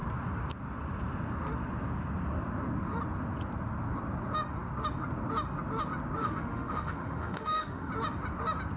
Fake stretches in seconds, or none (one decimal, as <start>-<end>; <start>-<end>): 6.2-7.9